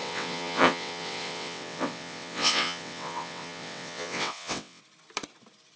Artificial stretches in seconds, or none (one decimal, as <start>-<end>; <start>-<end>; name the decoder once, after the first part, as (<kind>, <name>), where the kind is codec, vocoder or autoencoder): 0.0-4.8 (vocoder, WaveNeXt)